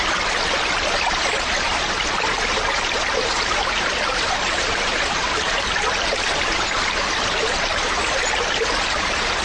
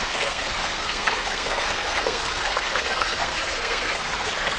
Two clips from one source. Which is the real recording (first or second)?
first